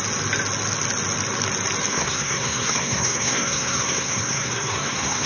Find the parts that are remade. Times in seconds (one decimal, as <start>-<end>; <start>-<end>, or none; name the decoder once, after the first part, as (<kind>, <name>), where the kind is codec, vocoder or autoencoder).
1.9-5.3 (codec, SNAC)